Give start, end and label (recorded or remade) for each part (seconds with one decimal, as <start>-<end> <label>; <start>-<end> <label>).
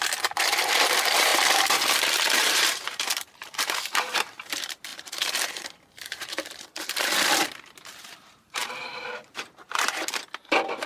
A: 0.0-10.9 remade